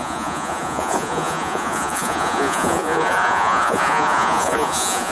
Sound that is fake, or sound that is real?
fake